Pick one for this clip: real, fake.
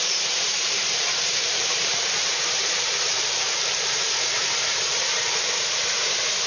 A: fake